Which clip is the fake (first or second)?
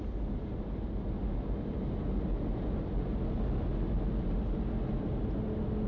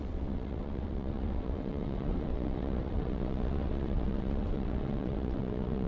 second